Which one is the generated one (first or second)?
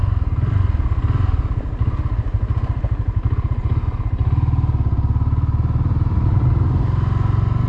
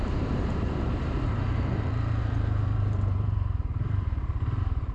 second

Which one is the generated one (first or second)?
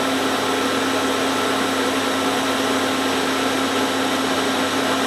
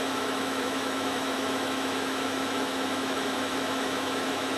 second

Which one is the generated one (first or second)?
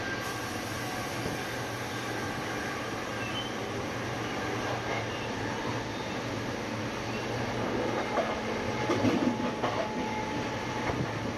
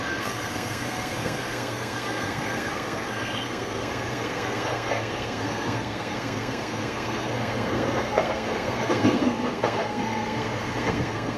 second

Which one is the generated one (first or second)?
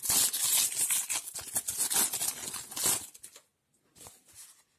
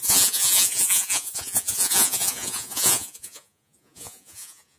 second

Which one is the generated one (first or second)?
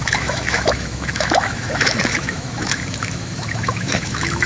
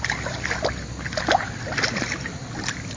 first